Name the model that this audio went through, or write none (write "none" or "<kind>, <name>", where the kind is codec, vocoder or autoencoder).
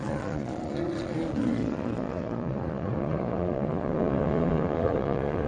vocoder, Vocos